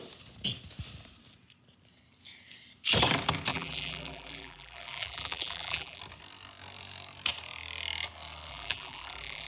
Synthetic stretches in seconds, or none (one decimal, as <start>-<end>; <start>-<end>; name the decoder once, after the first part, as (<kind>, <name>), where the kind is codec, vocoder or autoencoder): 3.5-6.0 (vocoder, BigVGAN v2); 8.5-9.5